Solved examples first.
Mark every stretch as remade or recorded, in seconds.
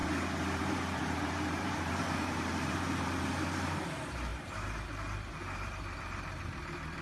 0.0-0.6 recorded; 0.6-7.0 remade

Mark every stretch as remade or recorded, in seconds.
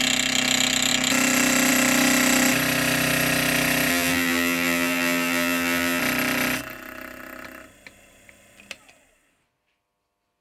0.0-3.9 recorded; 3.9-6.0 remade; 6.0-10.4 recorded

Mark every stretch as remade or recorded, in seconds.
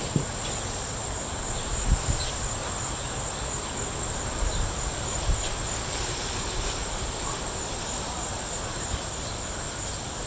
0.0-10.3 remade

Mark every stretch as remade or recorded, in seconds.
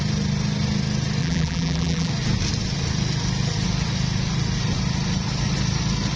0.0-1.2 recorded; 1.2-2.1 remade; 2.1-6.2 recorded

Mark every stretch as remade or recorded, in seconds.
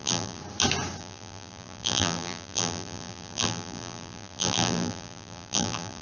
0.0-0.4 remade; 0.4-1.0 recorded; 1.0-6.0 remade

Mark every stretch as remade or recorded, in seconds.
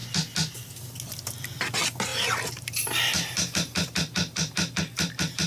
0.0-2.1 recorded; 2.1-5.5 remade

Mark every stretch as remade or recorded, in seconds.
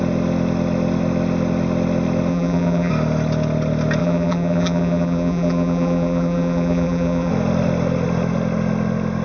0.0-2.3 recorded; 2.3-2.9 remade; 2.9-4.0 recorded; 4.0-7.3 remade; 7.3-9.2 recorded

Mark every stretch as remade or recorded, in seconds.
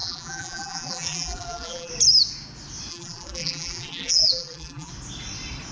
0.0-1.9 remade; 1.9-2.9 recorded; 2.9-4.9 remade; 4.9-5.7 recorded